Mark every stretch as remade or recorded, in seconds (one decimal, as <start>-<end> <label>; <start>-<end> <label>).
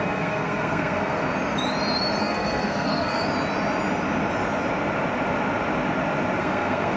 0.0-1.2 remade; 1.2-2.2 recorded; 2.2-3.2 remade; 3.2-6.4 recorded; 6.4-7.0 remade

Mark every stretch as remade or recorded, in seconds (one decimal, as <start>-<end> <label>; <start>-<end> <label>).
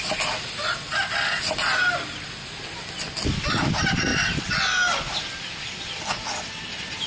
0.0-7.1 recorded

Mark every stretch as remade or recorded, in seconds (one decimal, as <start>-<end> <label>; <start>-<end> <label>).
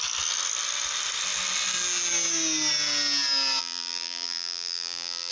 0.0-3.6 recorded; 3.6-5.3 remade